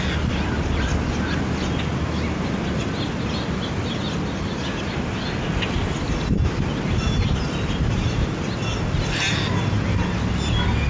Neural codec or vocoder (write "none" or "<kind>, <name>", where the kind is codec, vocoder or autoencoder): none